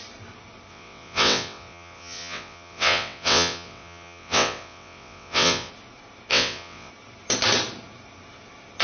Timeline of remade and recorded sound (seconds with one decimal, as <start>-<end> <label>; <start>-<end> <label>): 0.0-0.7 recorded; 0.7-5.7 remade; 5.7-6.3 recorded; 6.3-6.9 remade; 6.9-8.8 recorded